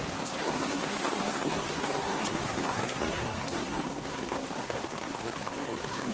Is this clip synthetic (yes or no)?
yes